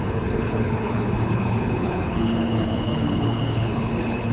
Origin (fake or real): fake